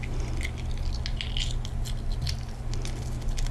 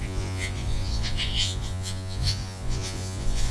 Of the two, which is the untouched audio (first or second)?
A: first